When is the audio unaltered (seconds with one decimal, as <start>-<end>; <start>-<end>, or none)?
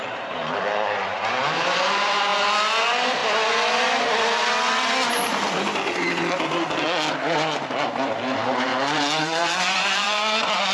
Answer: 2.3-2.8; 3.2-7.7; 8.7-9.2